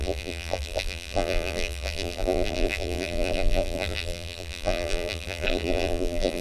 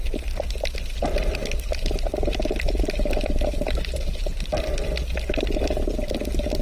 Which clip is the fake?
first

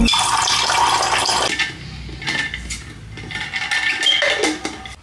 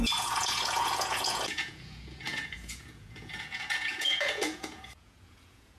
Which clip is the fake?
second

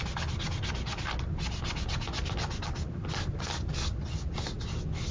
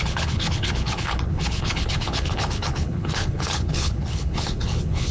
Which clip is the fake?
second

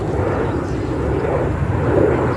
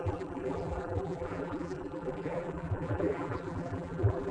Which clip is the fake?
second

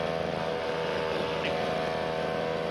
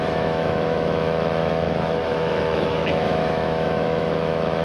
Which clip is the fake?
second